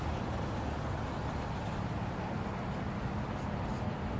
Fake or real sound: real